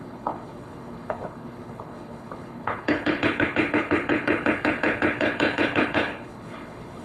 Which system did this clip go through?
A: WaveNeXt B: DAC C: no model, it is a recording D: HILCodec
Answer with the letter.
D